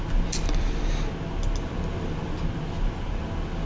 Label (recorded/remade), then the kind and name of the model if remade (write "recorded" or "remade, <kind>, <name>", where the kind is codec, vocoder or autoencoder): recorded